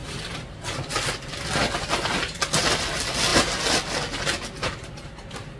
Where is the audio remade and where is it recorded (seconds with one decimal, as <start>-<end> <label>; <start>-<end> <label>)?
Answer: 0.0-5.6 recorded